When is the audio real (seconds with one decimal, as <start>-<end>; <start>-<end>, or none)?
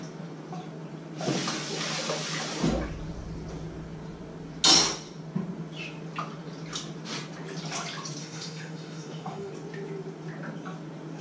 0.0-8.2; 9.5-11.2